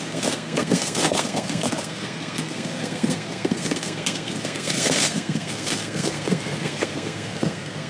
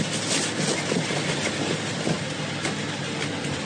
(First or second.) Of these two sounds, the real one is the second